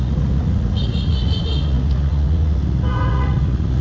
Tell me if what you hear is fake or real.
fake